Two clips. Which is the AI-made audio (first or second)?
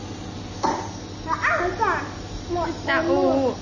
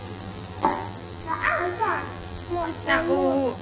second